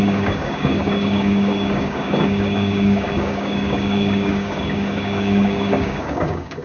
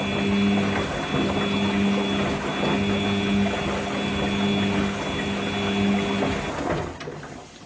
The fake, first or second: first